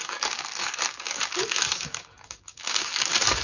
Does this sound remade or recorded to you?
remade